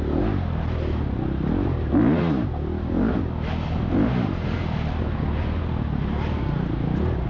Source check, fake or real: real